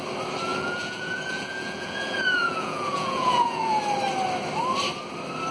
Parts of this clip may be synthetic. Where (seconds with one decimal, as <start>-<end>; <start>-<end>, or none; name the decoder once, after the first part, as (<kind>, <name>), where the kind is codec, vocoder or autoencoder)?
0.5-3.8 (vocoder, Vocos)